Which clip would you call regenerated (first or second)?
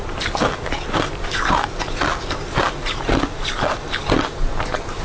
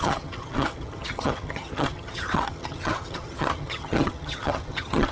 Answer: second